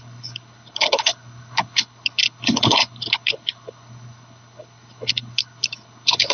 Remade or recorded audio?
remade